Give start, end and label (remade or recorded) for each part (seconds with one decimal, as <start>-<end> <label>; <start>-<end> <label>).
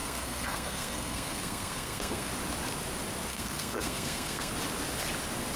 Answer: 0.0-2.3 remade; 2.3-3.3 recorded; 3.3-4.5 remade; 4.5-5.6 recorded